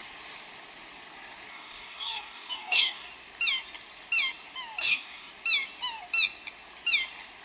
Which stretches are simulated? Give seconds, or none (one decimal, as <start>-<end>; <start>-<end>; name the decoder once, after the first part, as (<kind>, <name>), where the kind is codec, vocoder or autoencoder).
1.5-3.1 (codec, DAC); 4.8-5.3